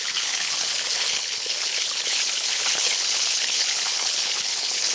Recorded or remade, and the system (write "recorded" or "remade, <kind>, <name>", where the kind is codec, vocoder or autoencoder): remade, codec, HILCodec